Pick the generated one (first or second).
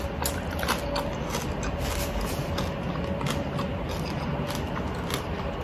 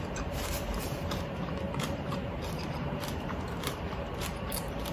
second